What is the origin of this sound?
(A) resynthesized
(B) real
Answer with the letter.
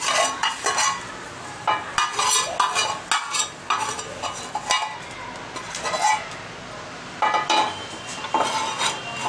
B